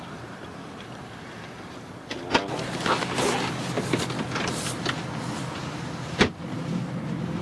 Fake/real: real